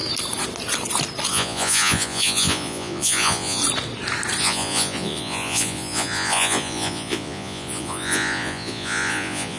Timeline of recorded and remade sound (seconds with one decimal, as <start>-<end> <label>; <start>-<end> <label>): 0.0-1.3 recorded; 1.3-3.6 remade; 3.6-4.4 recorded; 4.4-9.6 remade